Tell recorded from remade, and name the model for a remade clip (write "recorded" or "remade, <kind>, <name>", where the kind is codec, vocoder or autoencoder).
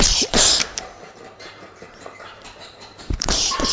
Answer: remade, vocoder, BigVGAN v2